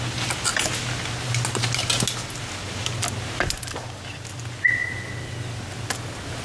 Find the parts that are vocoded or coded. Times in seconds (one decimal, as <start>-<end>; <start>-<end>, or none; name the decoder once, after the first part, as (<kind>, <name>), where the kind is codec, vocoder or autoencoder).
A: none